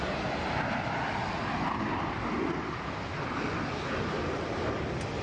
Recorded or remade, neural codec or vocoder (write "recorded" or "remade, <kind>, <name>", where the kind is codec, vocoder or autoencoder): recorded